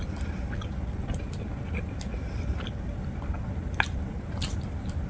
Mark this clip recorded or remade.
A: recorded